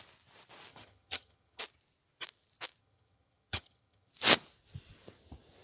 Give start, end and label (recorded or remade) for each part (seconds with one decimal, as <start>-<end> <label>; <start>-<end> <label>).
0.0-0.7 recorded; 0.7-1.6 remade; 1.6-2.8 recorded; 2.8-4.1 remade; 4.1-5.6 recorded